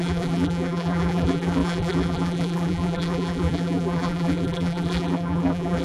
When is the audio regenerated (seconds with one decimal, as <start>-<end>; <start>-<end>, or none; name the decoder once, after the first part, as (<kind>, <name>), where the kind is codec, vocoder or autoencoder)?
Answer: 0.0-5.8 (vocoder, BigVGAN v2)